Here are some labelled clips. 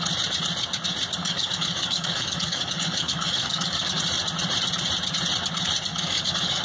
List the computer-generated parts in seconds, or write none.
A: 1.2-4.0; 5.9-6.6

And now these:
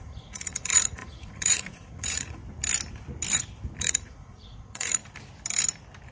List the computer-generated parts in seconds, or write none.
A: 0.0-2.4; 3.8-5.0